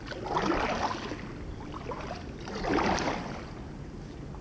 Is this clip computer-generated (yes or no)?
no